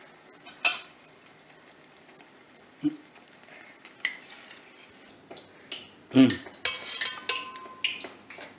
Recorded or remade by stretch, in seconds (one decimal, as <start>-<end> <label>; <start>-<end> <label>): 0.0-0.7 recorded; 0.7-4.9 remade; 4.9-8.6 recorded